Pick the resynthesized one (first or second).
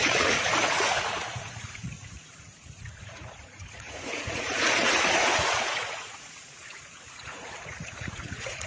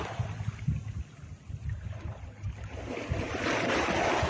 first